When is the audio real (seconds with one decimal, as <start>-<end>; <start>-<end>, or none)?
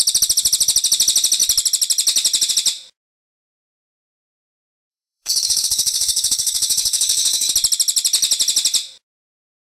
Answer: 0.0-4.9; 7.5-9.8